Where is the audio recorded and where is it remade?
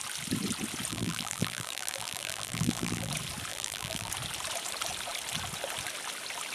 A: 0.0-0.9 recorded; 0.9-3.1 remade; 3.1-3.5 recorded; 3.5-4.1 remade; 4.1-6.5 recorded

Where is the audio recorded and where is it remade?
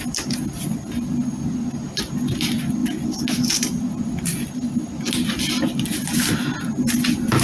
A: 0.0-7.4 recorded